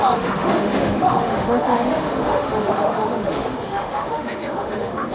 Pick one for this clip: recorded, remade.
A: remade